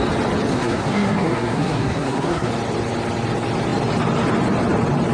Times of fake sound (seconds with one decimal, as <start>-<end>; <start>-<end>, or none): 0.5-2.5